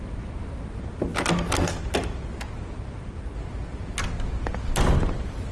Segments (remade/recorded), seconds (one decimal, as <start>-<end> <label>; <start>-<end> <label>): 0.0-5.5 recorded